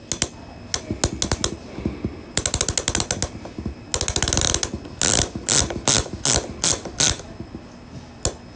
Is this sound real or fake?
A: real